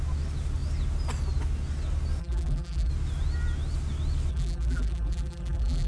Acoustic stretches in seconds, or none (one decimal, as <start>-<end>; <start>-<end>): 0.0-2.2; 2.9-4.3